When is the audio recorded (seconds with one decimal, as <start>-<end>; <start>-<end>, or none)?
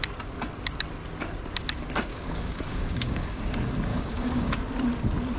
0.0-2.1; 3.4-3.9; 4.5-5.4